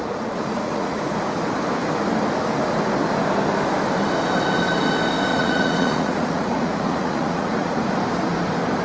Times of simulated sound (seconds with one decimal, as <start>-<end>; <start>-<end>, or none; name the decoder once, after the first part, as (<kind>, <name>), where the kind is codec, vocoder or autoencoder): 0.0-1.0 (vocoder, Vocos); 5.3-7.8